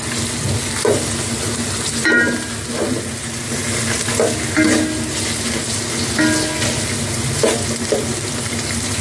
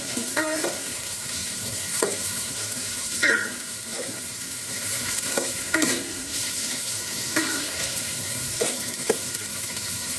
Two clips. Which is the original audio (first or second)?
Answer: first